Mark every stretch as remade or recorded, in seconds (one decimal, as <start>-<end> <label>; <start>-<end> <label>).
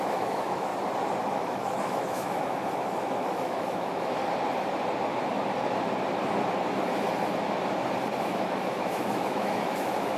0.0-0.7 remade; 0.7-1.3 recorded; 1.3-4.2 remade; 4.2-8.2 recorded; 8.2-10.2 remade